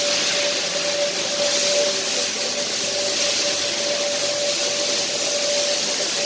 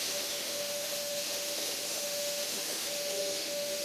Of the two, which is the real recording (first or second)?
first